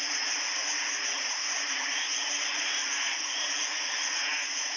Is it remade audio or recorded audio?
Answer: remade